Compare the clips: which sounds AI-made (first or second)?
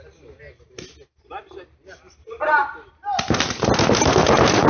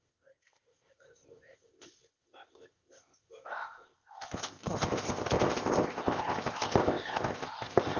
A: second